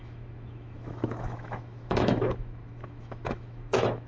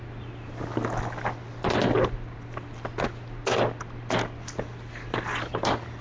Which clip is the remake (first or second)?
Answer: first